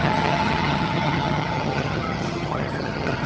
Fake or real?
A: fake